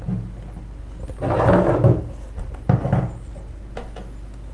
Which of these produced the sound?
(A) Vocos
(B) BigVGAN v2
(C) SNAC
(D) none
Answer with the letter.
D